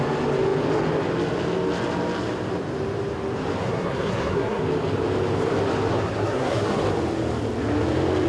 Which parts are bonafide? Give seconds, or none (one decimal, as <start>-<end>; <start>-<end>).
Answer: 0.0-3.6; 4.6-5.9; 6.8-8.3